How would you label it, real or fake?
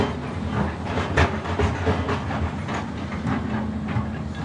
real